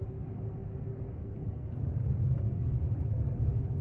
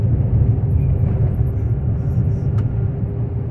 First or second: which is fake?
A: first